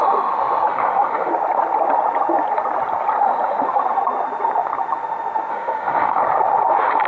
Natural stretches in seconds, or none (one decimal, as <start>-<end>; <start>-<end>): 0.0-0.7; 1.3-5.5; 6.2-7.1